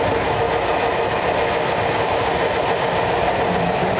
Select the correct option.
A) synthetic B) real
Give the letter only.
B